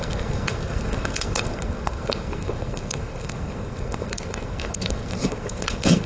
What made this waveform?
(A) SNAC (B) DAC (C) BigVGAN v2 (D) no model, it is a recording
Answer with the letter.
A